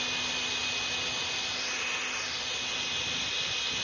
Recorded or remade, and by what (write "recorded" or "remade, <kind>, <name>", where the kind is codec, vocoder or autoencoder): recorded